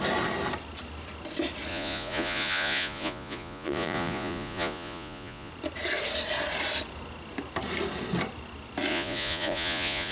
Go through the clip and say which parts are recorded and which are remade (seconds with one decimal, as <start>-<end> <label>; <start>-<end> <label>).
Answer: 0.0-1.7 recorded; 1.7-5.5 remade; 5.5-8.9 recorded; 8.9-10.1 remade